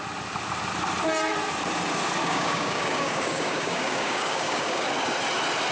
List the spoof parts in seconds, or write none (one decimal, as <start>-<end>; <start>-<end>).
2.2-4.9